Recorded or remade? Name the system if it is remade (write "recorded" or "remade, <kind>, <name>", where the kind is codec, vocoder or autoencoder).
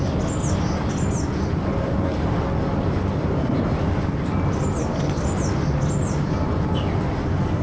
recorded